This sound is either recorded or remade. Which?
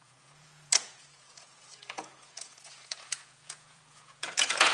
remade